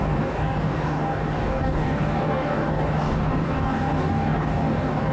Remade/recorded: remade